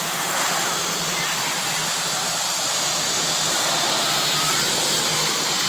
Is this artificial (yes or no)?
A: no